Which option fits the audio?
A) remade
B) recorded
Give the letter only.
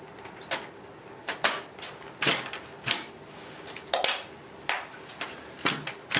B